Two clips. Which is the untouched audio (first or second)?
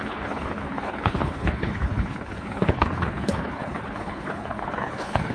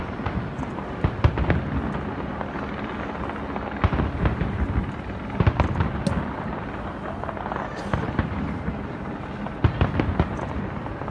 second